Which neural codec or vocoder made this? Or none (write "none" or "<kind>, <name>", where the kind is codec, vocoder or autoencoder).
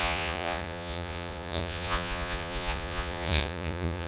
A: vocoder, Vocos